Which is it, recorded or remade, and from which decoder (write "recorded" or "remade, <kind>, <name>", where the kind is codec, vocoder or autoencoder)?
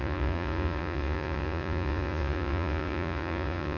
remade, vocoder, Vocos